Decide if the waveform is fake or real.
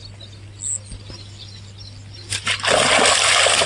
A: real